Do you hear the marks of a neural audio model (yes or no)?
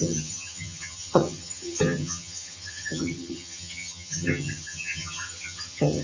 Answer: yes